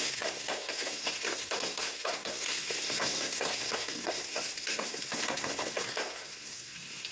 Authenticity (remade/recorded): remade